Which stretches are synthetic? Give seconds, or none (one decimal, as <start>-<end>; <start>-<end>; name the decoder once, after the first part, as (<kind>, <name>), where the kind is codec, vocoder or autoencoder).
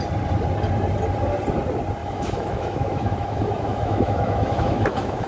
2.0-5.3 (autoencoder, DAC-VAE)